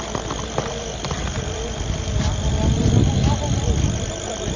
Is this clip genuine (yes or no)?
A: yes